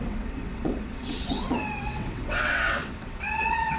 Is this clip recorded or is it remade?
remade